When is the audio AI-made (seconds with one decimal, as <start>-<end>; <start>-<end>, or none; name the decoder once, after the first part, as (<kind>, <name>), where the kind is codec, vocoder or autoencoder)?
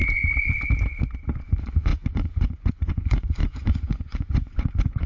1.4-5.1 (vocoder, Vocos)